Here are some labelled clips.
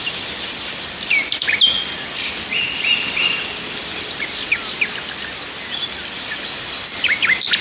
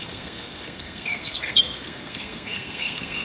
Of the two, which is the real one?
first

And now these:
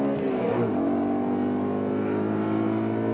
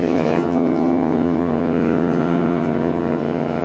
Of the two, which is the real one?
first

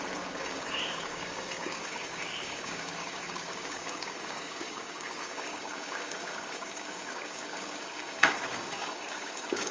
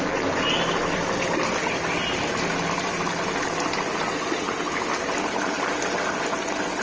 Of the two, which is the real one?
second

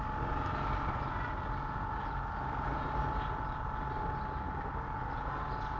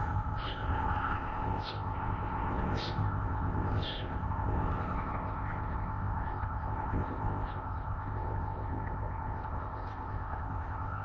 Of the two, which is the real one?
first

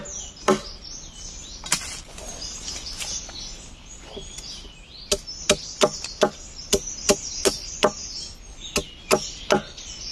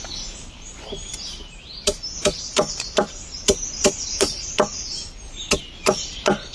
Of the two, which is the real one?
first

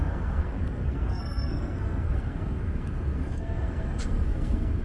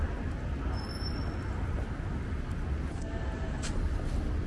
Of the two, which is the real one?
second